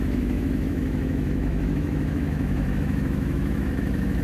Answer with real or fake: fake